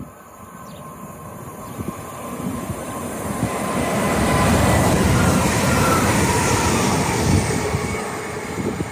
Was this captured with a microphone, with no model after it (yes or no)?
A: no